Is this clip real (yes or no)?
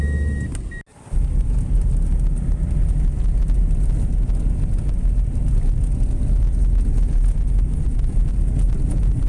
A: yes